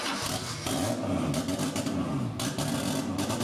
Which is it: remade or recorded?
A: recorded